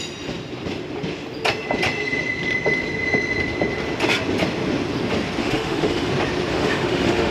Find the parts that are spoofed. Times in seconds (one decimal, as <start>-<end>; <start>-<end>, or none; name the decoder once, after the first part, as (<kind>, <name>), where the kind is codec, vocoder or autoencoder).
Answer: 5.4-6.1 (autoencoder, DAC-VAE); 6.5-7.3